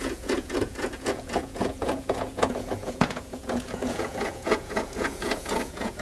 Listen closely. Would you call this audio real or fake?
fake